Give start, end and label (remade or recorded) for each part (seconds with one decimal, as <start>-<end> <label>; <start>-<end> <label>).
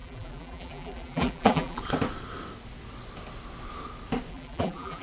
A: 0.0-1.8 remade; 1.8-4.3 recorded; 4.3-5.0 remade